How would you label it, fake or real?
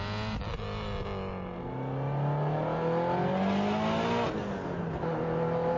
real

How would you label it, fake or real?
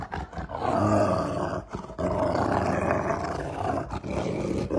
real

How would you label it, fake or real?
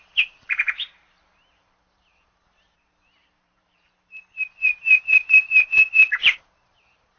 fake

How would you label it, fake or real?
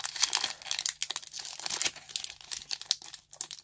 real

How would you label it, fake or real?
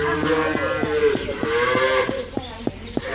fake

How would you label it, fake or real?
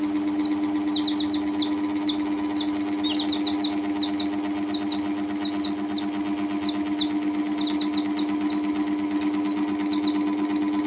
real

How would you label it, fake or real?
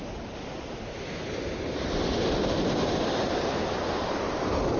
real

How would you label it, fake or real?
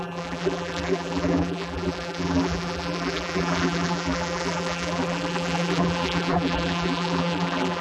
fake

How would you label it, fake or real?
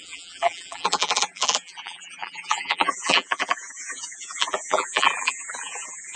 fake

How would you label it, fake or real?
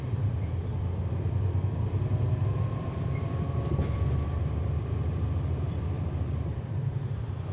fake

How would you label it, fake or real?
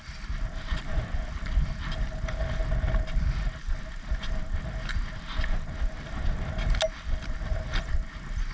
real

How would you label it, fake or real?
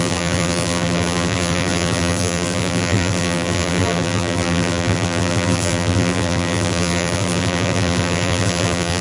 fake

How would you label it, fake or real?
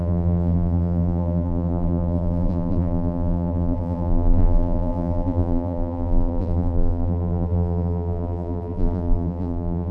fake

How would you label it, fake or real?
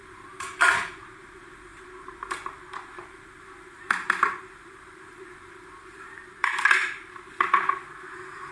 fake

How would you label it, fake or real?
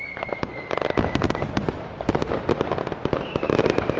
fake